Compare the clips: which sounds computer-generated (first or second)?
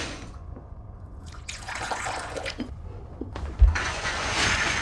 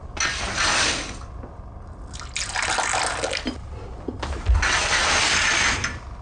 first